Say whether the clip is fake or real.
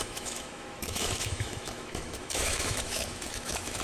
fake